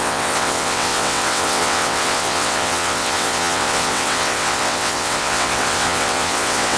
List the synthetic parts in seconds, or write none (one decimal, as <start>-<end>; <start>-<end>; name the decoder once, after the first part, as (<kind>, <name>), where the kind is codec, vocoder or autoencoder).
0.0-6.8 (vocoder, WaveNeXt)